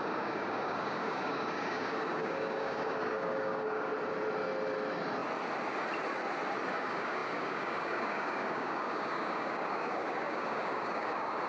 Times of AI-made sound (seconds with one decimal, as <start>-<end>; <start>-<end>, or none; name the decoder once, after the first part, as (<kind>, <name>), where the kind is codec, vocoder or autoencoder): 0.0-3.9 (codec, DAC); 6.7-11.5